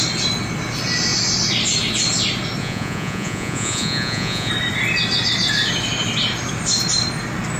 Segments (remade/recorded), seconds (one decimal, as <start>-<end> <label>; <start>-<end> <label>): 0.0-2.6 recorded; 2.6-4.5 remade; 4.5-7.6 recorded